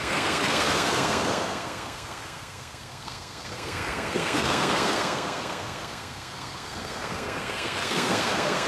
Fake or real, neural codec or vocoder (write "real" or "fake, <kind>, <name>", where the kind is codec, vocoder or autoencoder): fake, codec, SNAC